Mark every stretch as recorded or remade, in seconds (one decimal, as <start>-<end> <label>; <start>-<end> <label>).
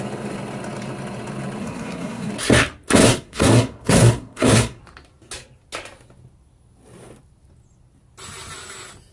0.0-1.6 recorded; 1.6-2.3 remade; 2.3-3.1 recorded; 3.1-4.8 remade; 4.8-9.1 recorded